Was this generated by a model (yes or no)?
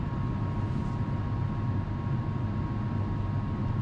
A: no